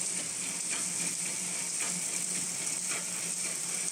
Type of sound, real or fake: real